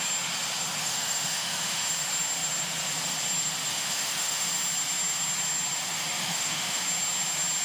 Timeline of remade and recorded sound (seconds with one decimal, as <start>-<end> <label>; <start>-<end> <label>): 0.0-0.8 recorded; 0.8-1.9 remade; 1.9-3.7 recorded; 3.7-4.5 remade; 4.5-6.2 recorded; 6.2-6.8 remade; 6.8-7.6 recorded